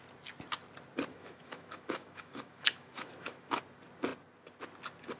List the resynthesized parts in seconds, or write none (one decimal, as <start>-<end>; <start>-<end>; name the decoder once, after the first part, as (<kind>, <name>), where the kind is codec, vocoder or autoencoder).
1.1-3.6 (autoencoder, DAC-VAE)